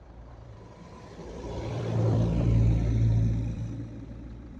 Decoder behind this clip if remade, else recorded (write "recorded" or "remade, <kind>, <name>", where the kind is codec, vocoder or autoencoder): remade, vocoder, BigVGAN v2